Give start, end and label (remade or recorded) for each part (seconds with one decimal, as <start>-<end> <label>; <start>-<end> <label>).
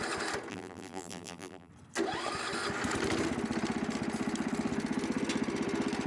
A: 0.0-0.5 recorded; 0.5-1.7 remade; 1.7-6.1 recorded